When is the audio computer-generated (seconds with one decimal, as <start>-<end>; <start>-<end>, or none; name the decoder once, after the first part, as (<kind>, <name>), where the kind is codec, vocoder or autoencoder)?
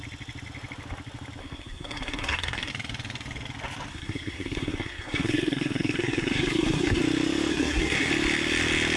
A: 1.4-2.7 (codec, SNAC); 3.9-7.0; 7.5-8.1